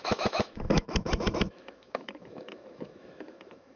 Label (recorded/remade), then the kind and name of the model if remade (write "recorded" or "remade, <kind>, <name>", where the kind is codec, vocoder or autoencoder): remade, autoencoder, DAC-VAE